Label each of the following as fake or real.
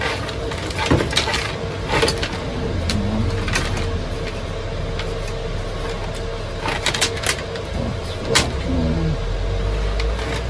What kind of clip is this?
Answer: real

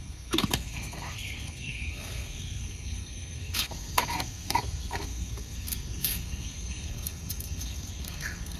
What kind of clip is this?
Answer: fake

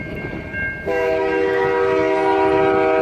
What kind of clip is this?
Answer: real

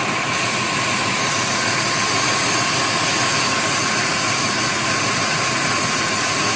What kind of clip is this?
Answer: fake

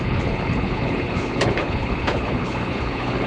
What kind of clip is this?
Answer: fake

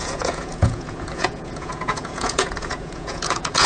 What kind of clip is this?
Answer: fake